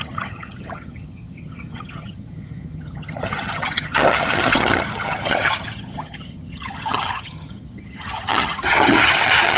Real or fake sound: fake